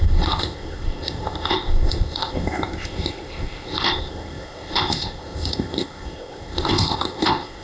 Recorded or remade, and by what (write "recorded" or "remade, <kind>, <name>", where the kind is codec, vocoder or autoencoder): remade, codec, ZipCodec